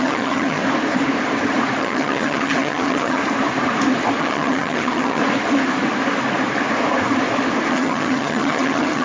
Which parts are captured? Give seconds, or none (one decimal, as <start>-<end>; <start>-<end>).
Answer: 0.6-1.8; 3.2-4.2; 5.2-7.7